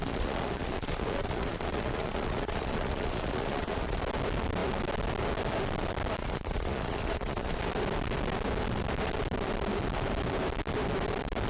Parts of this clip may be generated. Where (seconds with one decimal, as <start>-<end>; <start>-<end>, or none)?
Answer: 0.0-4.0; 6.2-7.6